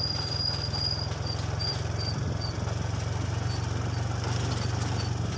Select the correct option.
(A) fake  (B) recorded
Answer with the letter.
B